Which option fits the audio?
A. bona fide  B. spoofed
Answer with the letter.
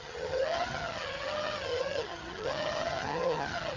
B